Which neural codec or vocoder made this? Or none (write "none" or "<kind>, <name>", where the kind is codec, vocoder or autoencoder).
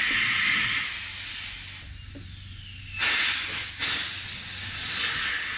none